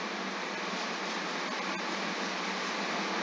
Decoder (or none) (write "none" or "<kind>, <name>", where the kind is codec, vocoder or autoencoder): none